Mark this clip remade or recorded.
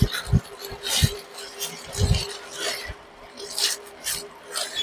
remade